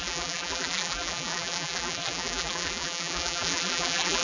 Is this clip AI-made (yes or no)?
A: yes